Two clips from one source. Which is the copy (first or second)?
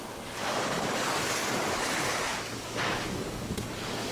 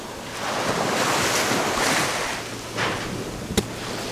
first